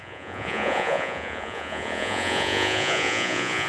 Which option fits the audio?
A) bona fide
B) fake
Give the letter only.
B